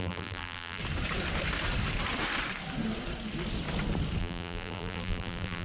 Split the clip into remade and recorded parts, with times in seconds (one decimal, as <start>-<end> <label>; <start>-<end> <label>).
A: 0.0-0.8 remade; 0.8-4.2 recorded; 4.2-5.6 remade